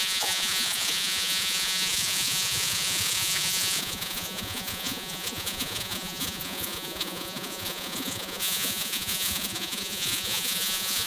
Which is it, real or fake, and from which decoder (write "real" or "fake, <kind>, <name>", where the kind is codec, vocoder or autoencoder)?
fake, vocoder, Vocos